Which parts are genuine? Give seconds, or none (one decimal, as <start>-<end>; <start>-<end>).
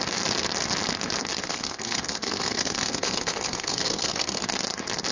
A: 0.0-1.4; 4.5-5.1